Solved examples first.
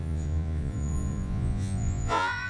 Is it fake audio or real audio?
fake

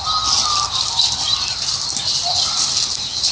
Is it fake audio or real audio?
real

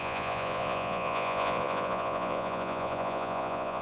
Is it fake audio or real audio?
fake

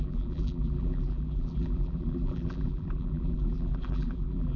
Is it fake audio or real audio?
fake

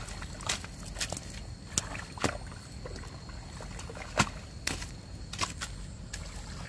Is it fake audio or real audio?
real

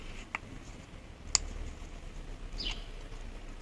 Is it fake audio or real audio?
real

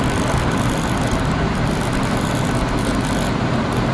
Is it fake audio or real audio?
real